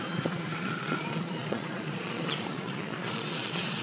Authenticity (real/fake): fake